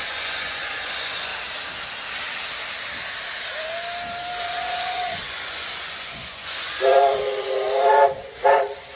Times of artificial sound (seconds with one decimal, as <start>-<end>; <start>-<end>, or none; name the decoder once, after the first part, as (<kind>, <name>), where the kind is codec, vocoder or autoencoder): 0.0-1.3 (vocoder, Vocos); 4.4-9.0